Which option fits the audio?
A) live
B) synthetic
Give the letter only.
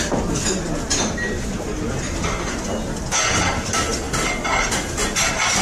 A